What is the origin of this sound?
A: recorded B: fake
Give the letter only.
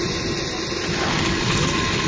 A